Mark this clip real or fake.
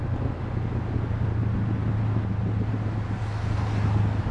real